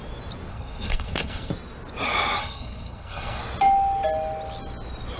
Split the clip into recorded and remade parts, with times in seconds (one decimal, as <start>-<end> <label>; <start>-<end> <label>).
0.0-0.5 recorded; 0.5-1.5 remade; 1.5-2.4 recorded; 2.4-3.4 remade; 3.4-5.2 recorded